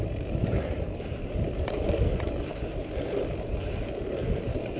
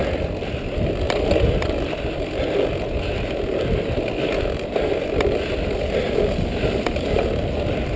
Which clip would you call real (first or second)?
second